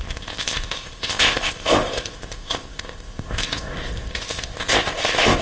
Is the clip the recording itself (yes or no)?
no